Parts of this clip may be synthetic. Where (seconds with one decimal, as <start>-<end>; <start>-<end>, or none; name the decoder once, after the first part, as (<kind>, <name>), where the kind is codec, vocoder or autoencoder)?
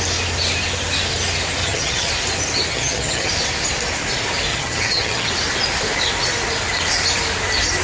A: 1.6-2.1 (vocoder, HiFi-GAN); 2.7-3.3; 4.5-5.3